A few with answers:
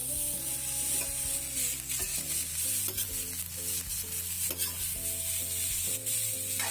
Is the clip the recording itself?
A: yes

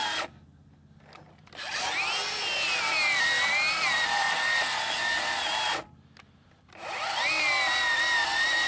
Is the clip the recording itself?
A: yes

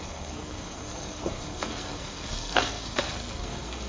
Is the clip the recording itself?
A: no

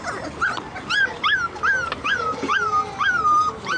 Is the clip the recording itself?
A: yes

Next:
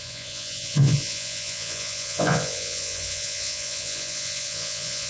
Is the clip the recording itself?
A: no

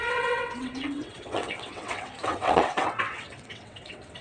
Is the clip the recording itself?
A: no